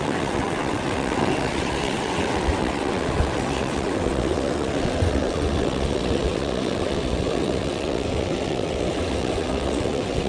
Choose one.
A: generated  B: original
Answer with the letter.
A